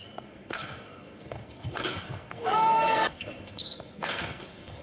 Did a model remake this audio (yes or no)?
yes